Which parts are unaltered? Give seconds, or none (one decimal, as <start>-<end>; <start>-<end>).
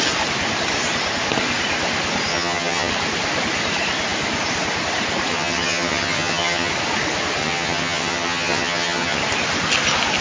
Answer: 0.0-2.3; 2.9-5.3; 6.7-7.4; 9.2-10.2